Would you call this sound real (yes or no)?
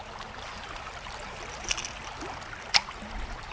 yes